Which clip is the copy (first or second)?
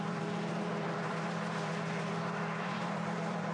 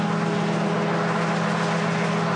first